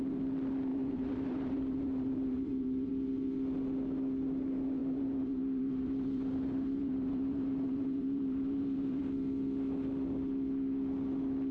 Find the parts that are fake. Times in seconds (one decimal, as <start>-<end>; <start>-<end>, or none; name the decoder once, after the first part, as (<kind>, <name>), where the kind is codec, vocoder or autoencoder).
0.7-2.9 (vocoder, BigVGAN v2); 4.8-9.0

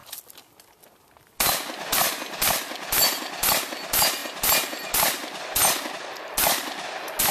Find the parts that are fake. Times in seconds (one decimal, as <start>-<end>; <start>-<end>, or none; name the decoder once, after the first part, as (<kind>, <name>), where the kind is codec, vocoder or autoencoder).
none

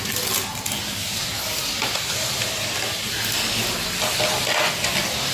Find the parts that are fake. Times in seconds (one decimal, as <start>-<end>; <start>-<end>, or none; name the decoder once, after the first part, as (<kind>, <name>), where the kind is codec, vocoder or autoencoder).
none

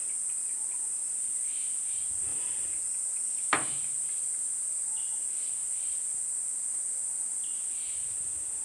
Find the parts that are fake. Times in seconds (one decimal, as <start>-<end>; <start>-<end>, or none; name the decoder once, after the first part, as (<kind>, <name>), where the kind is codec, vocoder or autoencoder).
none